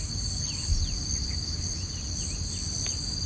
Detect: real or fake real